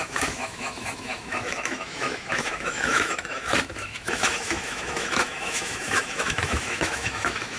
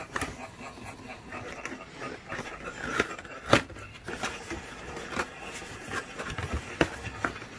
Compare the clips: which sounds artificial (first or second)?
first